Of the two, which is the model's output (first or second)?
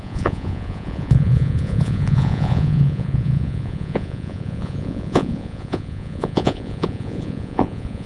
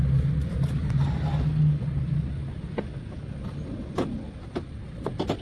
first